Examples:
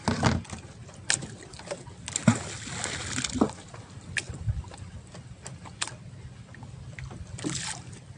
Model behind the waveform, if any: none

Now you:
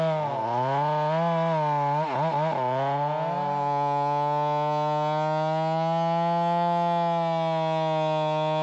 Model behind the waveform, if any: none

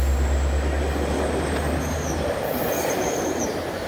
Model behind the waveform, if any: none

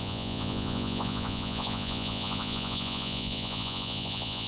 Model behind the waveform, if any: vocoder, Vocos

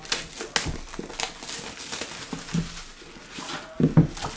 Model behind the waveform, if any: none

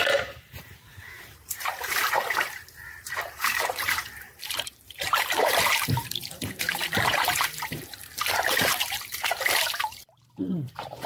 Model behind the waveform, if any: vocoder, BigVGAN v2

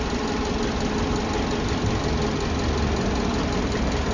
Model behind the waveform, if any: none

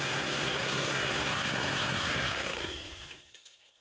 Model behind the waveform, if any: codec, SNAC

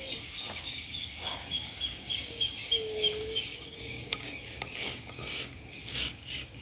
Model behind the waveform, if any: codec, DAC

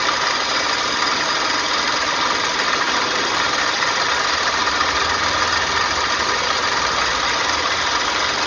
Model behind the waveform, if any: none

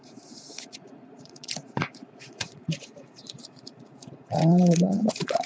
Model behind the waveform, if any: vocoder, Vocos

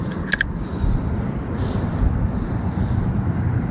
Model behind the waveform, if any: none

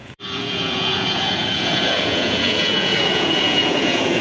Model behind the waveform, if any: vocoder, Vocos